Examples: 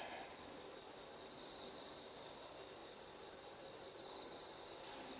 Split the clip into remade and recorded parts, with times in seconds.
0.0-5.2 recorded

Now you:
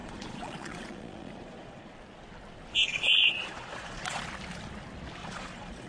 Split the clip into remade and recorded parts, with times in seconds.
0.0-1.9 remade; 1.9-2.9 recorded; 2.9-4.2 remade; 4.2-5.2 recorded; 5.2-5.9 remade

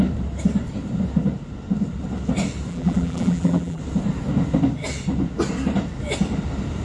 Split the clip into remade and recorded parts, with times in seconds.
0.0-2.7 recorded; 2.7-3.8 remade; 3.8-6.8 recorded

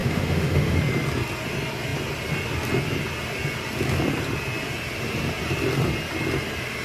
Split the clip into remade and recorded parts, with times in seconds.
0.0-0.8 remade; 0.8-6.8 recorded

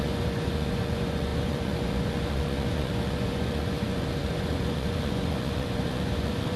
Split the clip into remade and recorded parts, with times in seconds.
0.0-6.6 remade

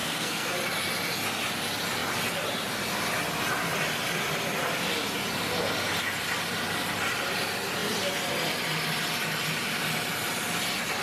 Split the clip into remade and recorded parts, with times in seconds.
0.0-0.5 remade; 0.5-11.0 recorded

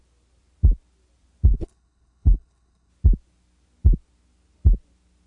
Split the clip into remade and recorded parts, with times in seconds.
0.0-1.5 recorded; 1.5-2.9 remade; 2.9-5.3 recorded